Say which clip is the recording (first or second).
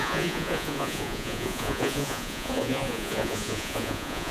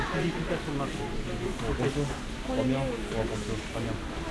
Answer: second